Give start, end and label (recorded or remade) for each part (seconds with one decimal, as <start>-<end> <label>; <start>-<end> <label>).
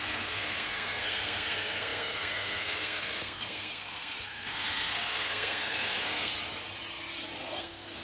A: 0.0-6.3 remade; 6.3-7.4 recorded; 7.4-8.0 remade